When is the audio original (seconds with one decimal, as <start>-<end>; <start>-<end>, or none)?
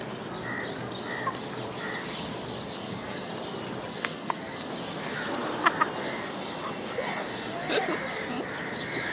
0.0-2.8; 3.3-3.9; 4.7-9.1